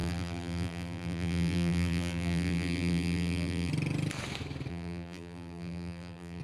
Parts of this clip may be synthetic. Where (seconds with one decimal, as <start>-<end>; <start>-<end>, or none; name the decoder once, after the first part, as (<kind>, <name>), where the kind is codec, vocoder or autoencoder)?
0.0-3.7 (vocoder, BigVGAN v2); 4.7-6.4